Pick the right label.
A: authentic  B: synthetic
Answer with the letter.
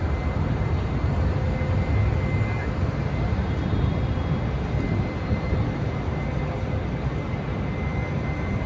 A